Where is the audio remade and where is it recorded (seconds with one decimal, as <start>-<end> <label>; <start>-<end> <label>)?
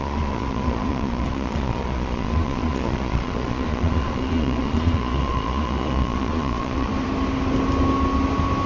0.0-6.9 remade; 6.9-8.7 recorded